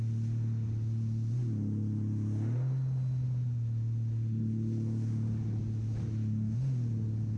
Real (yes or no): yes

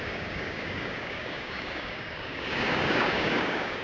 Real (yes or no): no